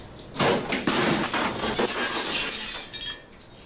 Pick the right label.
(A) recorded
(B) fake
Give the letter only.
A